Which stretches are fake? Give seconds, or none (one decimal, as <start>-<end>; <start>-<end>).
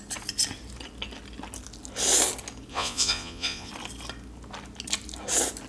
2.7-3.7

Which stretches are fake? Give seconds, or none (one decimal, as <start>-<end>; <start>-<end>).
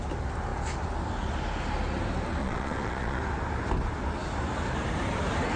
2.4-3.2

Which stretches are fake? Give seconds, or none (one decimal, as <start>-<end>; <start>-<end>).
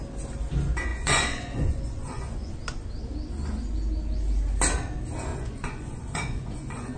0.9-2.5; 5.3-7.0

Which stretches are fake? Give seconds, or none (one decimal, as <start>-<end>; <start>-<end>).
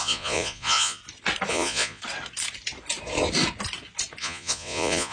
0.0-1.0; 1.5-2.0; 4.2-5.1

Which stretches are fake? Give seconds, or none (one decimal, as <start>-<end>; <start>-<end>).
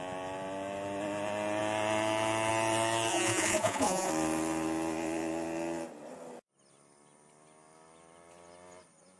3.1-4.1